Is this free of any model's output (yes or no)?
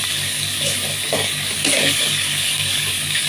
no